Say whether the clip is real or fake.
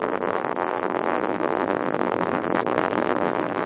fake